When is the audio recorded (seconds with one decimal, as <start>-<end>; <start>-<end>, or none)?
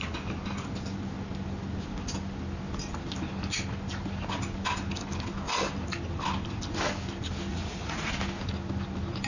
0.0-7.5; 8.1-9.3